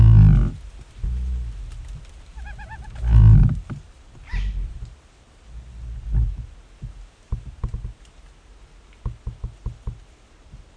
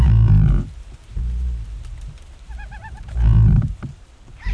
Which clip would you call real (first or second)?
first